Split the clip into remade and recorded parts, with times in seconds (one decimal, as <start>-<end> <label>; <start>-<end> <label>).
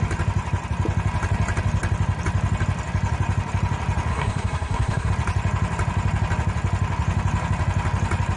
0.0-4.1 recorded; 4.1-5.1 remade; 5.1-8.4 recorded